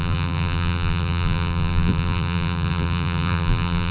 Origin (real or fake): fake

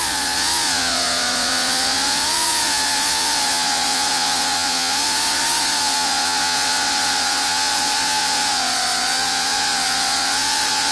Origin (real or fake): fake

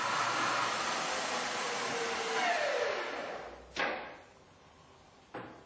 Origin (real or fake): real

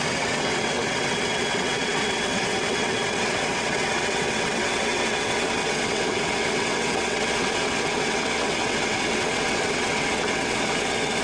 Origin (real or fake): fake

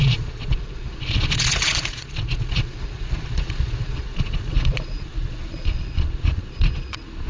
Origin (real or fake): fake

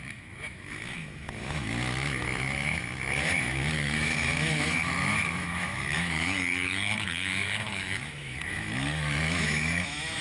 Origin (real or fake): fake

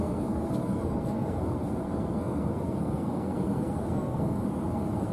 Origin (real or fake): fake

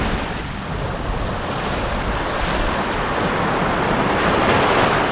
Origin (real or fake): real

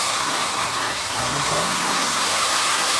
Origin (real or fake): fake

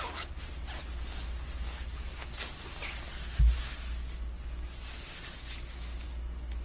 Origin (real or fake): real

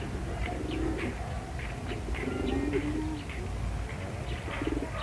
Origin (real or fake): real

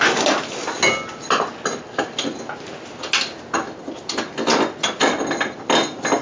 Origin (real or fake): real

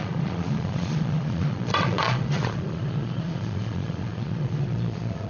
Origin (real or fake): fake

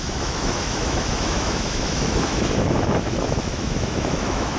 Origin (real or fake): fake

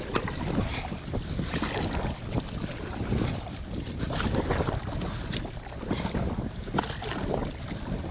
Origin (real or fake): real